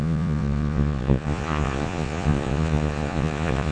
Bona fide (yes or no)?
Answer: no